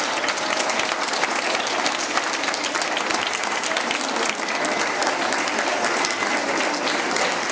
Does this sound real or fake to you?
real